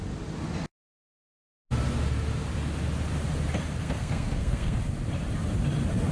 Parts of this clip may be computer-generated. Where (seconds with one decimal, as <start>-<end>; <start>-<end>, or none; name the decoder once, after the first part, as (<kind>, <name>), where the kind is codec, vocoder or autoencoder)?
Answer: 3.8-4.8 (codec, SNAC)